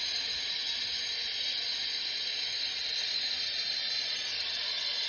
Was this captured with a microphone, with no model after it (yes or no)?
yes